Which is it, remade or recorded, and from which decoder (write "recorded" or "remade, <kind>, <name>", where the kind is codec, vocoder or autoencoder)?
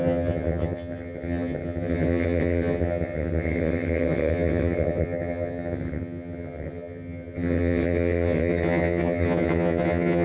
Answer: remade, vocoder, HiFi-GAN